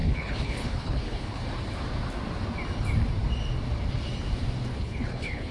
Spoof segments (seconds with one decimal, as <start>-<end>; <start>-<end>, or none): 0.0-1.4; 4.7-5.5